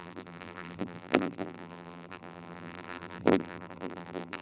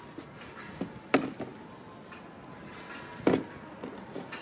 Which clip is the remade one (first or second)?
first